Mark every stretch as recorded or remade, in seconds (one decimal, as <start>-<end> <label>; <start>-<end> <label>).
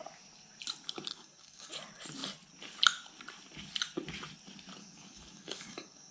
0.0-1.1 recorded; 1.1-1.7 remade; 1.7-4.8 recorded; 4.8-6.1 remade